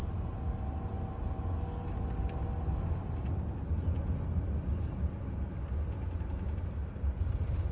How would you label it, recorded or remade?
recorded